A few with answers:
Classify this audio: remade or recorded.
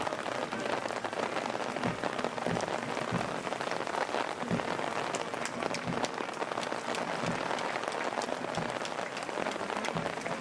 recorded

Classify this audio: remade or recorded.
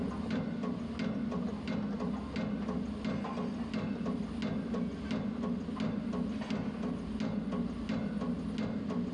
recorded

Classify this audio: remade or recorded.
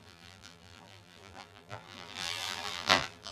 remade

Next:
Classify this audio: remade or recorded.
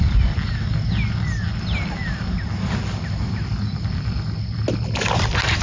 recorded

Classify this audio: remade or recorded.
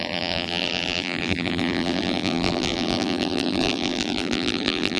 remade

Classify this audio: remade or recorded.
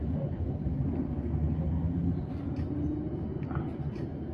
recorded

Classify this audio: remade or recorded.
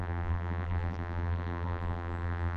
remade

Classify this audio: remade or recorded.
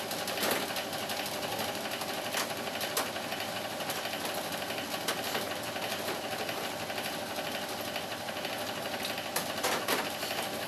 recorded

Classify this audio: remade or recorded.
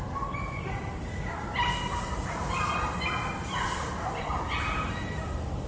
recorded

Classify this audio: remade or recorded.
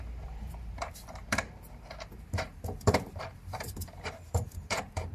remade